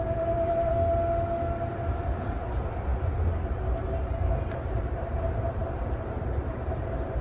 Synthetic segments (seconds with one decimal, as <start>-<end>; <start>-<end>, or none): 0.0-0.7; 1.7-2.9; 4.3-7.2